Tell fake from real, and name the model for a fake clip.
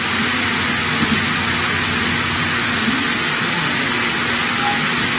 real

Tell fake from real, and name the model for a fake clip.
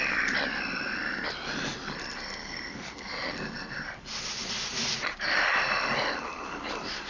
fake, vocoder, BigVGAN v2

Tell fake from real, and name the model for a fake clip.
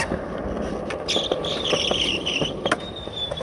real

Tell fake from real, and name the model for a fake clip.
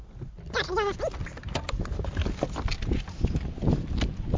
real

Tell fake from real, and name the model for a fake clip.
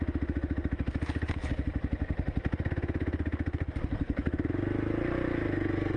real